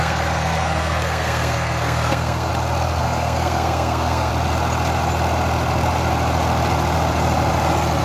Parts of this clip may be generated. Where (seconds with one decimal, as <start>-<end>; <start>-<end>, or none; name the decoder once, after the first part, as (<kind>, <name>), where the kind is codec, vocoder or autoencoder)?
0.0-2.5 (codec, SNAC); 3.0-4.3